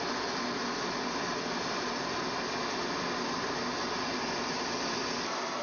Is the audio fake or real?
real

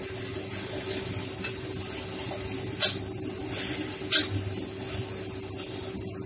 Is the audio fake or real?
real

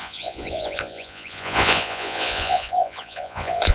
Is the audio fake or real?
fake